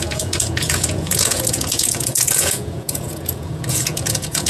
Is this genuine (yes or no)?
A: no